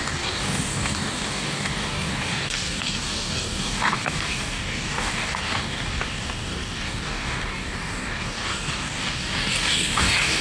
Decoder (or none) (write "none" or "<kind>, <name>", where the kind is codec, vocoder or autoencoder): codec, DAC